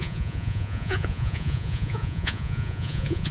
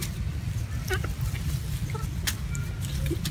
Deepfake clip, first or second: first